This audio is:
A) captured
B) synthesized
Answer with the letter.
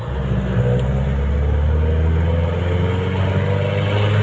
A